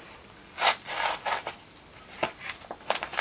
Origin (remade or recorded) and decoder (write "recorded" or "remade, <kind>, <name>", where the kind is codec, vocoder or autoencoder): recorded